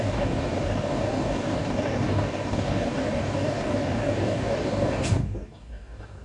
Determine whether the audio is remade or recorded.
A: remade